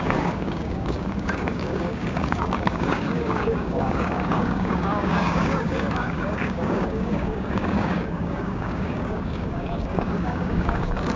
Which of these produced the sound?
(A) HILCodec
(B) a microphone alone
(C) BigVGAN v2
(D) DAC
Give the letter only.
D